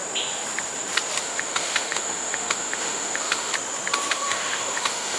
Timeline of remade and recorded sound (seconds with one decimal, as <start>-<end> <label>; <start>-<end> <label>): 0.0-1.2 recorded; 1.2-3.5 remade; 3.5-4.1 recorded; 4.1-5.2 remade